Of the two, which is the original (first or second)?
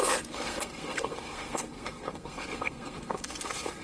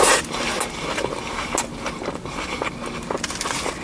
second